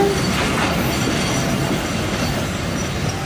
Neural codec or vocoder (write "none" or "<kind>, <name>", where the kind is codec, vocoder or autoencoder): none